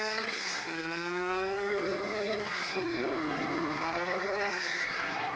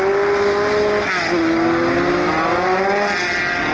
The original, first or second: second